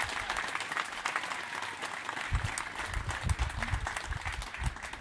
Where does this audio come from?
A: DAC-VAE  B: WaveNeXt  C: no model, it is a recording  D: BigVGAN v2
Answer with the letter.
C